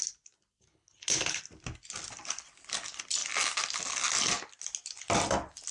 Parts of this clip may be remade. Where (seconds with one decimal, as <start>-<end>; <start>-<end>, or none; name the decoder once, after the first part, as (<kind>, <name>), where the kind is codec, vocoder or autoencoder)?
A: 0.7-1.4 (codec, HILCodec)